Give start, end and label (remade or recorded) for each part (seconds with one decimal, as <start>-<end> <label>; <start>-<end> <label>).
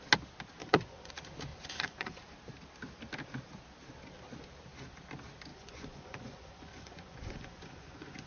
0.0-0.6 recorded; 0.6-1.1 remade; 1.1-1.5 recorded; 1.5-2.2 remade; 2.2-5.5 recorded; 5.5-8.3 remade